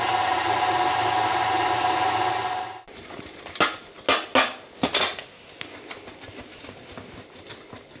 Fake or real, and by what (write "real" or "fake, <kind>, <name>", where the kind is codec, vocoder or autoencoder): real